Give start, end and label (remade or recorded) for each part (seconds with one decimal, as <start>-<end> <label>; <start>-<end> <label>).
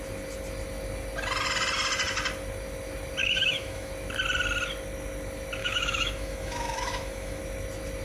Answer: 0.0-3.2 recorded; 3.2-3.9 remade; 3.9-5.6 recorded; 5.6-7.4 remade; 7.4-8.0 recorded